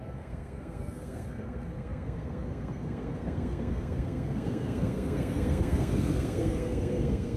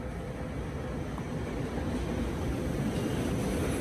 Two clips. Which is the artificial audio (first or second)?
first